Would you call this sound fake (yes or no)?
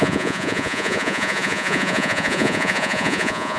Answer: yes